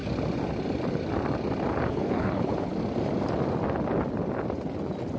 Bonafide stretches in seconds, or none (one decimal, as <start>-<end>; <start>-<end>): 0.0-1.9; 2.7-5.2